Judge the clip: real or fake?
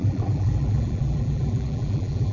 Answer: fake